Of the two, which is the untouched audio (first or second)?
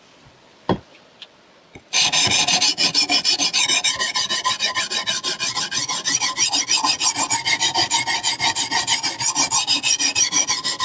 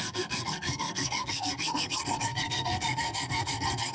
first